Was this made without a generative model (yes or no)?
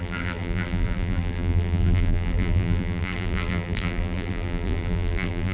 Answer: no